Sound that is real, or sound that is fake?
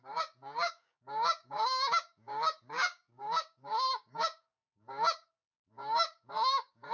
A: fake